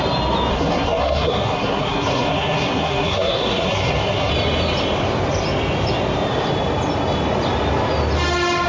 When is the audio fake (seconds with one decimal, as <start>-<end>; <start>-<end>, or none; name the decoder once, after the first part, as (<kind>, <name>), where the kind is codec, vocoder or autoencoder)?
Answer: 0.5-4.3 (codec, SNAC)